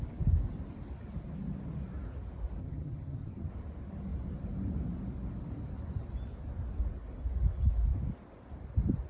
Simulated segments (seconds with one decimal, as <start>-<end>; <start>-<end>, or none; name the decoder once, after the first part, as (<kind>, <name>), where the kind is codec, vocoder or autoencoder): 2.6-3.5 (vocoder, HiFi-GAN)